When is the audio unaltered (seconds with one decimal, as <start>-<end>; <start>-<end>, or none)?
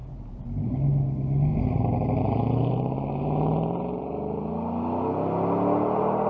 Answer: 0.7-1.5; 4.5-6.3